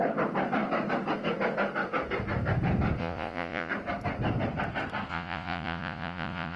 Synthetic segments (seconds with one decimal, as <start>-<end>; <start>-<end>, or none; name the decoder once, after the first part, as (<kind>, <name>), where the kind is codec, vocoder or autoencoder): 3.0-3.7 (vocoder, Vocos); 5.1-6.6

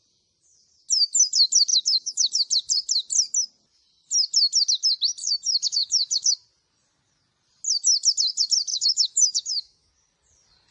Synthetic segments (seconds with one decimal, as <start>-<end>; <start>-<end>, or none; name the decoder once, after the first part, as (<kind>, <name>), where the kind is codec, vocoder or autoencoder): 1.7-2.3 (autoencoder, DAC-VAE); 5.2-6.3; 8.7-9.9